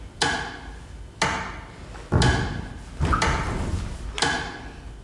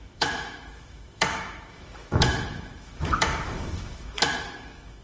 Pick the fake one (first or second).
second